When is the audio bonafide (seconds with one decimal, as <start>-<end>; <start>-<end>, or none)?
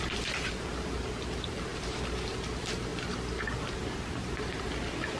none